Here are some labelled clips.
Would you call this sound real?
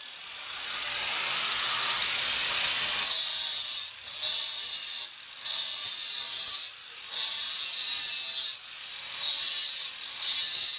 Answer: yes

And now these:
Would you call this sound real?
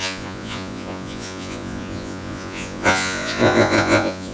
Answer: no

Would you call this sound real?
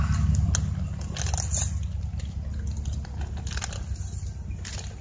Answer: yes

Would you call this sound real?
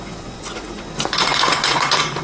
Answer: no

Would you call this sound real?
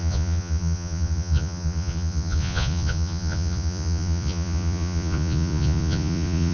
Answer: no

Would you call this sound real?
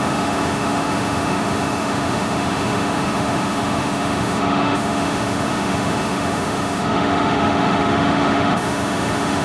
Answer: no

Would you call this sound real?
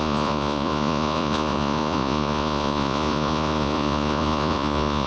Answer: no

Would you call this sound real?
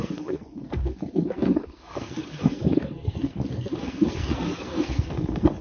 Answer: no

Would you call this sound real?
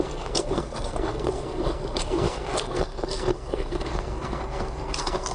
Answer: no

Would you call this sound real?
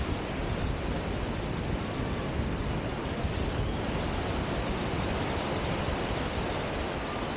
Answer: yes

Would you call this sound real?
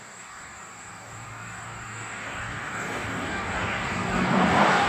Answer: no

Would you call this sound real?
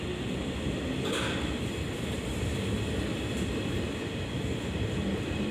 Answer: yes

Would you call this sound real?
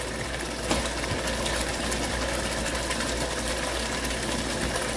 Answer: yes